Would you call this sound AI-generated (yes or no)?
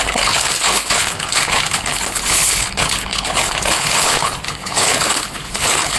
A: yes